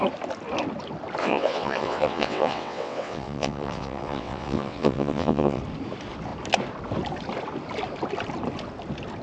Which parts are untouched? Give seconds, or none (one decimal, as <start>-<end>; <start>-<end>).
0.0-1.2; 5.6-9.2